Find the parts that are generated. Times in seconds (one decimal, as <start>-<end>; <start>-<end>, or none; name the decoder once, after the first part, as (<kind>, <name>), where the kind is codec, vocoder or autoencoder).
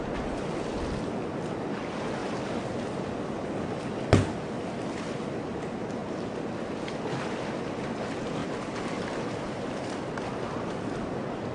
none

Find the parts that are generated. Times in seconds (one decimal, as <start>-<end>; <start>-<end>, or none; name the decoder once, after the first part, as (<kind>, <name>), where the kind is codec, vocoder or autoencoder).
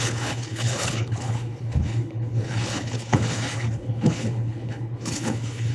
0.0-5.7 (codec, HILCodec)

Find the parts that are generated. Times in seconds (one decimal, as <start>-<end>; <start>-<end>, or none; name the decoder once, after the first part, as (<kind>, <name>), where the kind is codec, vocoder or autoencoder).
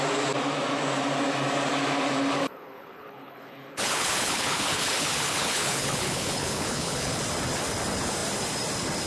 2.4-7.2 (codec, HILCodec)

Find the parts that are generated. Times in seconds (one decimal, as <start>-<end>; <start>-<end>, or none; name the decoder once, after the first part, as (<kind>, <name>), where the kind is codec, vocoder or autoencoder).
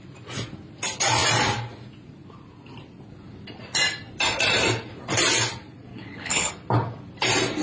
5.9-6.5 (codec, HILCodec)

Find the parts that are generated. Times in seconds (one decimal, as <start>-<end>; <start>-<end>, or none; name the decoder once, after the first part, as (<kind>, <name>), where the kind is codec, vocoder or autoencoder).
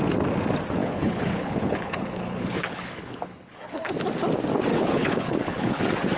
0.8-3.9 (codec, HILCodec); 4.7-5.8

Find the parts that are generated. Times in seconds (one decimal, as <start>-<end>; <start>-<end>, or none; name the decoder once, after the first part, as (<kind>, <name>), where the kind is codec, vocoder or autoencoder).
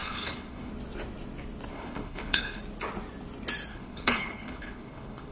0.0-0.7 (codec, HILCodec); 1.7-2.6; 3.7-5.3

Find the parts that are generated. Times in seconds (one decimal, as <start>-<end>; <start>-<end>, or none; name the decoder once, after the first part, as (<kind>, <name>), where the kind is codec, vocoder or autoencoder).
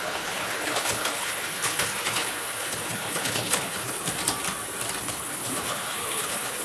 0.0-4.2 (codec, HILCodec); 5.0-6.6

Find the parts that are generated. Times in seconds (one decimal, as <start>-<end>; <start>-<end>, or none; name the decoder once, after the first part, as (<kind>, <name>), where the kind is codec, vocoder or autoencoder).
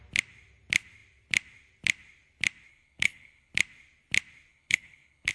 2.7-3.5 (codec, HILCodec); 4.5-5.3